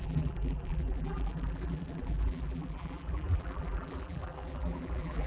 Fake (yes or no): yes